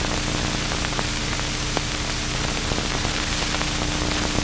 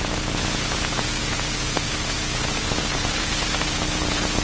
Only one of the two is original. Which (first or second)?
first